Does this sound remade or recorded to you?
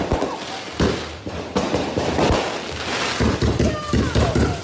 recorded